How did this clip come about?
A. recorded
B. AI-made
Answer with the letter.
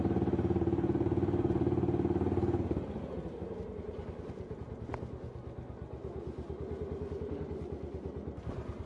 A